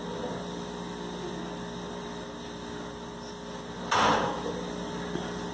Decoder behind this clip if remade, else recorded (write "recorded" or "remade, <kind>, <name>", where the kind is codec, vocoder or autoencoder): recorded